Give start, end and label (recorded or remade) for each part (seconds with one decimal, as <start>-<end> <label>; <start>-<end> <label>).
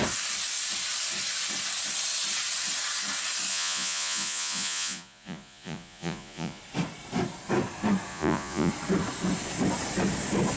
0.0-3.5 recorded; 3.5-6.6 remade; 6.6-8.1 recorded; 8.1-8.7 remade; 8.7-10.6 recorded